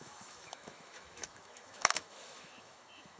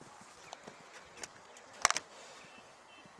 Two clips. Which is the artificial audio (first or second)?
first